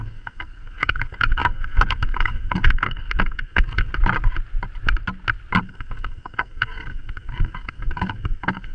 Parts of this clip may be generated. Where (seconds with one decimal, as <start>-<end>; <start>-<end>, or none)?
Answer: 0.0-3.9; 5.6-8.7